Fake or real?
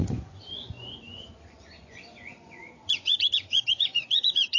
fake